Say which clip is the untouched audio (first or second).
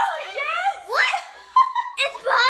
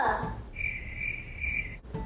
second